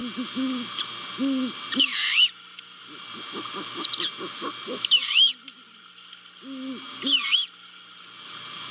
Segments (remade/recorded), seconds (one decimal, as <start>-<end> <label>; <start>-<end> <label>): 0.0-8.7 recorded